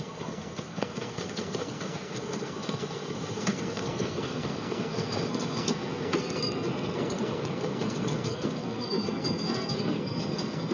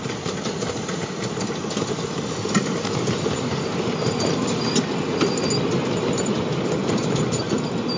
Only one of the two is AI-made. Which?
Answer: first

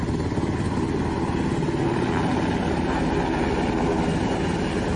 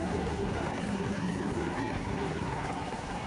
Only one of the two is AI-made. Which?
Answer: second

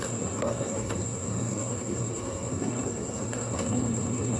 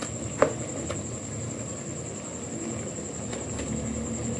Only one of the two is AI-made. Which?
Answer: first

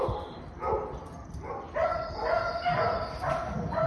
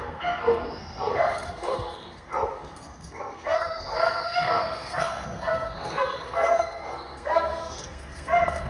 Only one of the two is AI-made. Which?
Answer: second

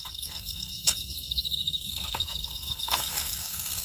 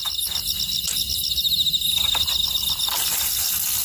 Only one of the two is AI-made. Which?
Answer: first